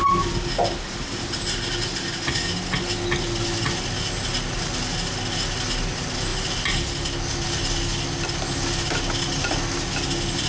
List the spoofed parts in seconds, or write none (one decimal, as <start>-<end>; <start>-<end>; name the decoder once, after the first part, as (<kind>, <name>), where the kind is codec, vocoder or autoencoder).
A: none